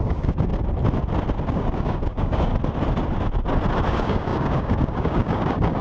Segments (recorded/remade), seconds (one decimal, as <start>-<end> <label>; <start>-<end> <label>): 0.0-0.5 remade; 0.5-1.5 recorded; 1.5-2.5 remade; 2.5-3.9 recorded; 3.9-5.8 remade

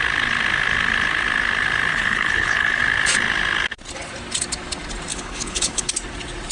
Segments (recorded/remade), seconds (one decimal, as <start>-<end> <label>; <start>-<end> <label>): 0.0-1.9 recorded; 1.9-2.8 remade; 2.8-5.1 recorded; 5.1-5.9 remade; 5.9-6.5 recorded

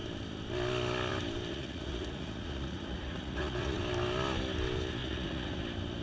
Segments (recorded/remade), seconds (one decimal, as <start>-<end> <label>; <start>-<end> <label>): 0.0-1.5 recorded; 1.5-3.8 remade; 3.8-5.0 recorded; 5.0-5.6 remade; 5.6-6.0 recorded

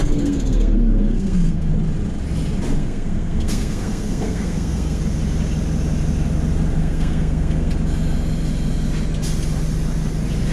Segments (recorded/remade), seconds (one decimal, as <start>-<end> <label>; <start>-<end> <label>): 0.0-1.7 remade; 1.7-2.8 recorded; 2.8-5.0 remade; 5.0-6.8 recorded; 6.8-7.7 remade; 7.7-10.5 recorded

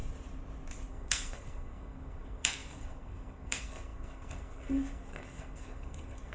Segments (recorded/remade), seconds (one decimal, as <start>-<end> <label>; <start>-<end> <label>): 0.0-0.9 recorded; 0.9-6.3 remade

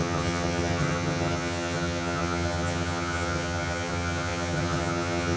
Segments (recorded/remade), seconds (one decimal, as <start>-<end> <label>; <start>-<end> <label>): 0.0-5.4 remade

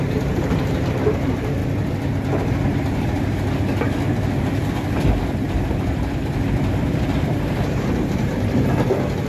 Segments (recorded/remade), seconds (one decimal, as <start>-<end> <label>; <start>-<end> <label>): 0.0-1.6 remade; 1.6-5.2 recorded; 5.2-8.3 remade; 8.3-9.3 recorded

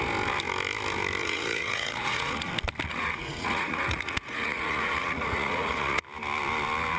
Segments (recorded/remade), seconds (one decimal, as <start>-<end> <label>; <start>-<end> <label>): 0.0-1.2 recorded; 1.2-2.5 remade; 2.5-2.9 recorded; 2.9-6.0 remade; 6.0-7.0 recorded